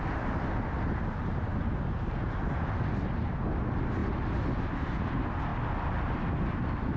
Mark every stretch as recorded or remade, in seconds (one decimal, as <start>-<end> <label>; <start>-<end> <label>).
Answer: 0.0-7.0 recorded